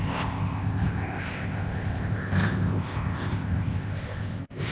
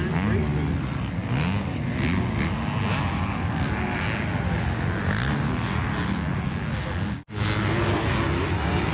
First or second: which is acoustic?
second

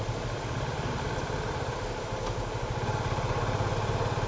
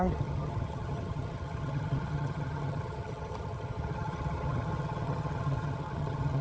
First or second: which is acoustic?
first